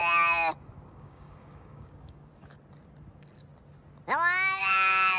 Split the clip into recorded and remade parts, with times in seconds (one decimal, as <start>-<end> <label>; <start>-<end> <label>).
0.0-0.9 recorded; 0.9-2.3 remade; 2.3-4.6 recorded; 4.6-5.2 remade